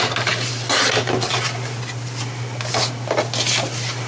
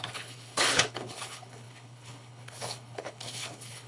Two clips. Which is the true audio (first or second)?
first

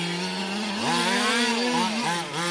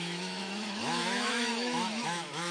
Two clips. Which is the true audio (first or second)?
first